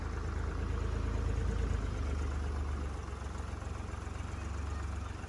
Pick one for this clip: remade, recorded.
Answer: recorded